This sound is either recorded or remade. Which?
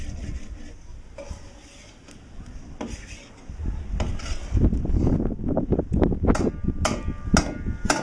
recorded